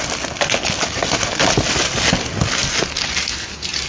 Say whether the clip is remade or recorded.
recorded